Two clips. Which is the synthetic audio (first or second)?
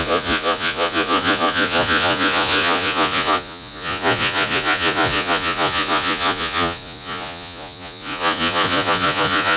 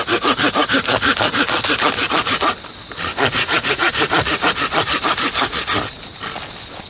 first